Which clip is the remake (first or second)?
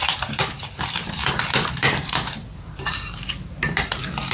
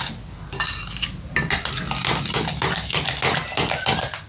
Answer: first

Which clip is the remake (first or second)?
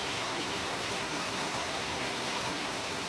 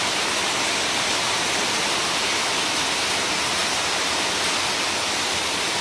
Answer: first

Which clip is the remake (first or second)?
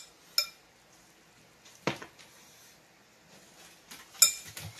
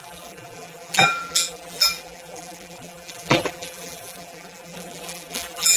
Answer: second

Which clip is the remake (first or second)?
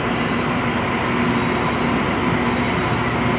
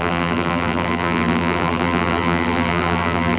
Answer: second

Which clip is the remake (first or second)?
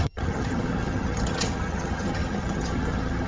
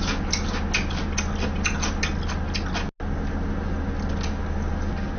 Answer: first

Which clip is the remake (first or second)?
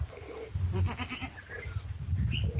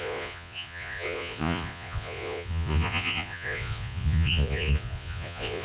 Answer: second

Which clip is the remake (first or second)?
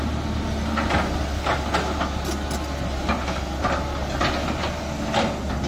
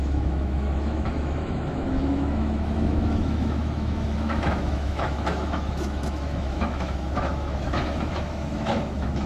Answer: second